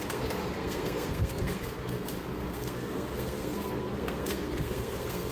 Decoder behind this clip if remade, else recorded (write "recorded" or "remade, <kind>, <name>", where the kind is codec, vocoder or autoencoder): remade, codec, SNAC